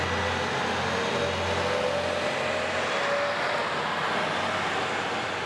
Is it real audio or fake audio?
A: real